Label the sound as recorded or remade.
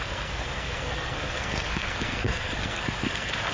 remade